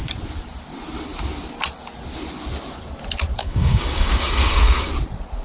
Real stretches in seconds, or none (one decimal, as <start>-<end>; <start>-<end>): 0.0-3.4; 4.9-5.4